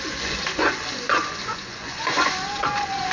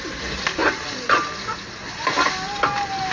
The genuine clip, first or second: second